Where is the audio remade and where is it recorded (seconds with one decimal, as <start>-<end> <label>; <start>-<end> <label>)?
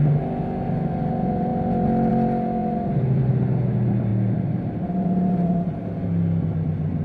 0.0-2.6 recorded; 2.6-3.3 remade; 3.3-4.1 recorded; 4.1-5.8 remade; 5.8-7.0 recorded